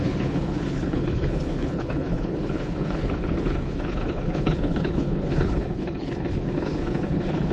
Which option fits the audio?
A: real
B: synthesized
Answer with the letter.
B